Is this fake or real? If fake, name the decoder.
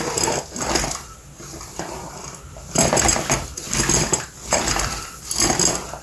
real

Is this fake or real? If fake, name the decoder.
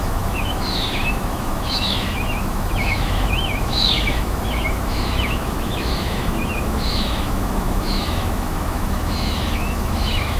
fake, autoencoder, DAC-VAE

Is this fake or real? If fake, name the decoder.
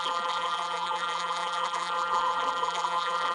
fake, vocoder, BigVGAN v2